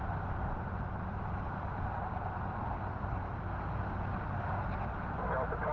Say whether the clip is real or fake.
real